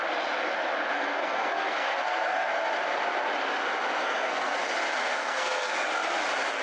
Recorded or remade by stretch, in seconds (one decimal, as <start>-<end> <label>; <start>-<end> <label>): 0.0-0.9 recorded; 0.9-2.5 remade; 2.5-4.0 recorded; 4.0-4.6 remade; 4.6-5.0 recorded; 5.0-5.9 remade; 5.9-6.6 recorded